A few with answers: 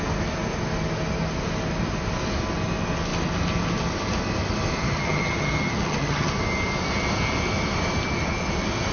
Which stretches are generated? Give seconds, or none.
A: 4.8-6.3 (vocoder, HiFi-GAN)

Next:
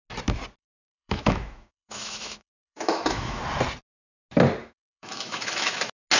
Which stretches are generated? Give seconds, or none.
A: 0.6-3.4 (autoencoder, DAC-VAE); 4.6-5.8

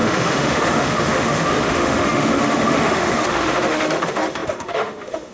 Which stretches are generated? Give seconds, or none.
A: 0.0-5.3 (autoencoder, DAC-VAE)

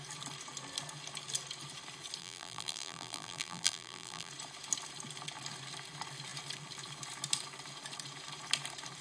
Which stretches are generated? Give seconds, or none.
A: 2.2-4.3 (vocoder, BigVGAN v2)

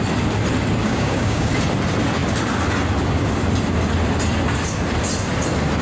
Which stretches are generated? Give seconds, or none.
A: 0.8-1.5 (codec, DAC)

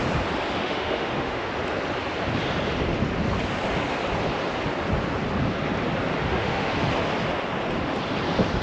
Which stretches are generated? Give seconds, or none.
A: 0.6-1.5 (autoencoder, DAC-VAE); 6.2-6.7

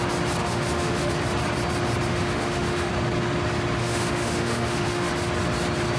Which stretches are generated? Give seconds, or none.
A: 0.4-1.1 (autoencoder, DAC-VAE); 2.1-2.9; 3.8-5.1